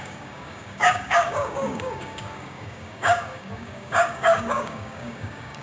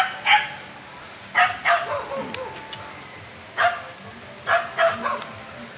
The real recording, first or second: second